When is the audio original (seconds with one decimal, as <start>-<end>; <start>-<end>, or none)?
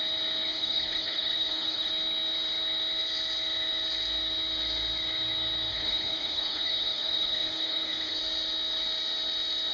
0.0-0.5; 1.9-5.7; 8.2-9.7